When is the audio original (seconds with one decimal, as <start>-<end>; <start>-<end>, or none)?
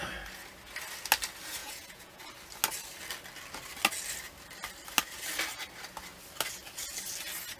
0.0-1.6; 2.2-7.6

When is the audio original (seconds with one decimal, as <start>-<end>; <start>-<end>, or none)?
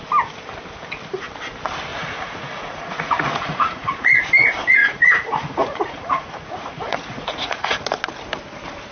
0.0-1.9; 4.2-4.8; 7.9-8.9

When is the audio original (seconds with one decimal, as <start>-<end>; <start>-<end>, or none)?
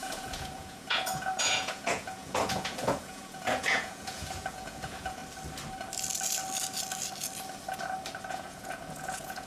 5.2-8.3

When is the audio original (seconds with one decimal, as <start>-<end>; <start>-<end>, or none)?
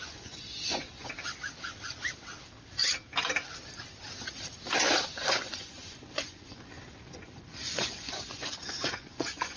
1.1-5.1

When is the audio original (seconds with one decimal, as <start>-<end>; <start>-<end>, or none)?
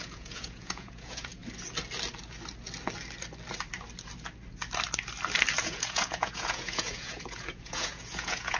1.4-5.6